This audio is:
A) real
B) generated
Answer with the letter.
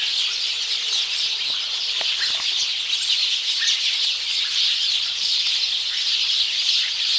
A